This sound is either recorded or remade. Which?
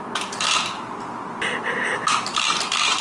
recorded